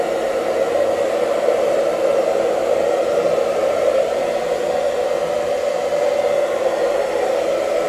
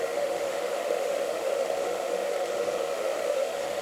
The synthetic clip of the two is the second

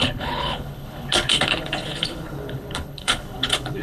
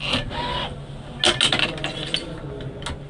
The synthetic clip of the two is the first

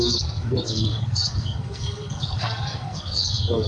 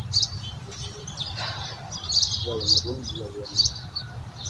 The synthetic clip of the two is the first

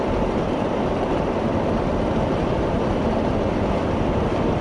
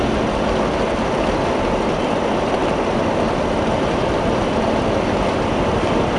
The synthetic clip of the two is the first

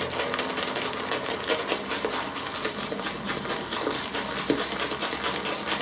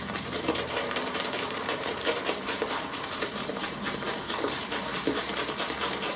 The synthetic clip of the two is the second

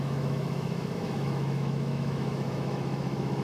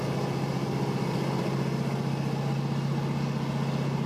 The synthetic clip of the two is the first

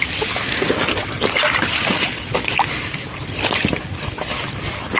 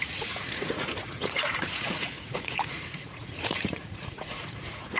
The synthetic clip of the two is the second